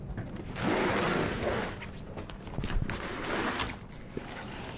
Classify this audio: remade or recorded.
recorded